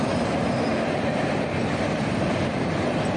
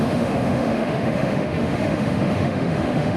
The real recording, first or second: first